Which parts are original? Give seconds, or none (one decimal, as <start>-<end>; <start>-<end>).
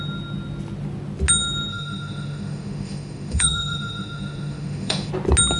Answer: 0.0-1.7; 5.1-5.6